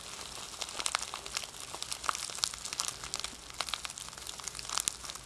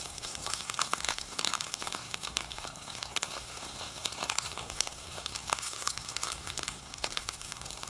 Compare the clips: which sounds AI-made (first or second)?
second